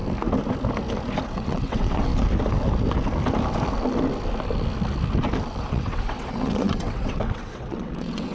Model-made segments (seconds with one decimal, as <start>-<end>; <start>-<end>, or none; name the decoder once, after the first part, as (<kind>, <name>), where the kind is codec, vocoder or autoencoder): 1.3-2.1 (vocoder, WaveNeXt); 5.6-8.3